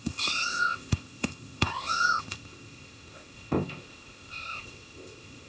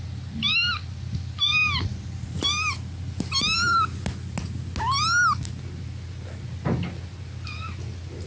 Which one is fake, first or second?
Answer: first